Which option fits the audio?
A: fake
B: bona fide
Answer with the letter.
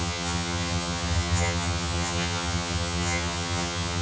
A